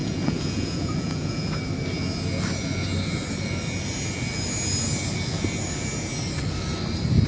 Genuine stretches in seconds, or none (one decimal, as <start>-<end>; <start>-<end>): 1.5-7.3